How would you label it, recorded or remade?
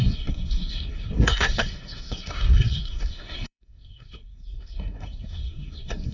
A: remade